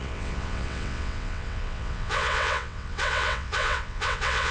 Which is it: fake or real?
fake